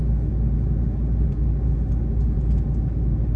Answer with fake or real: real